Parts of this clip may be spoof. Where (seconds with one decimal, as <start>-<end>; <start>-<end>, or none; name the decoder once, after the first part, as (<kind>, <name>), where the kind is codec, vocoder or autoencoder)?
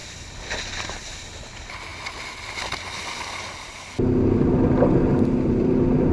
none